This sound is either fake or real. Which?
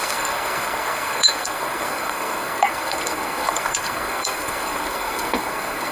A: fake